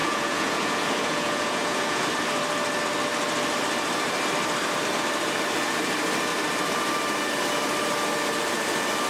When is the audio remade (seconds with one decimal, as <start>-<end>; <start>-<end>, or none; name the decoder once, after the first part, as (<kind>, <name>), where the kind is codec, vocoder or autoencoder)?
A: 0.0-2.1 (vocoder, Vocos)